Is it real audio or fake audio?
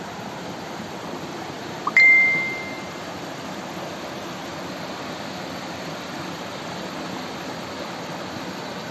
real